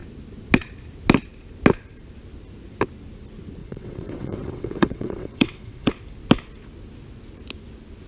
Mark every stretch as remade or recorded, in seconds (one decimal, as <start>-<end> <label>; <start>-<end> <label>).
0.0-3.6 recorded; 3.6-5.9 remade; 5.9-8.1 recorded